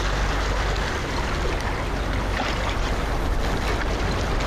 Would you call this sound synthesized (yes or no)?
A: no